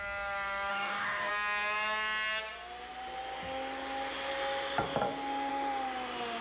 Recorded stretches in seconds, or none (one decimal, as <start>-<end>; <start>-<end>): 0.0-0.7; 1.3-6.4